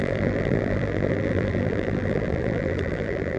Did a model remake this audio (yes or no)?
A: yes